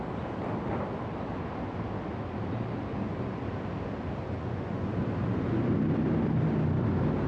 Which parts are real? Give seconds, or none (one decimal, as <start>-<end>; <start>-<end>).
0.0-2.9; 3.4-4.2; 4.9-7.3